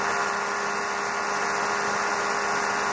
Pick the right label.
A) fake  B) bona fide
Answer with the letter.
B